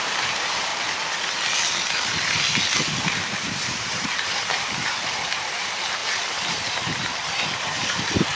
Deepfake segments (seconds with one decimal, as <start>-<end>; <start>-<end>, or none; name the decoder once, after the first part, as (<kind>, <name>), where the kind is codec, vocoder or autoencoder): 0.0-0.7 (vocoder, BigVGAN v2); 3.0-8.4